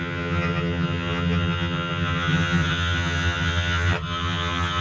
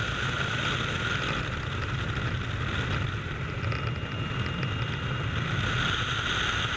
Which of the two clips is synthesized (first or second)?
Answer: first